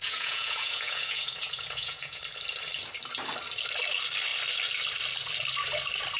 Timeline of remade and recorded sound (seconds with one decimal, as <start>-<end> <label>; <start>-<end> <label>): 0.0-2.2 remade; 2.2-6.2 recorded